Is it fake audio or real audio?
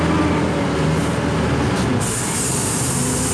real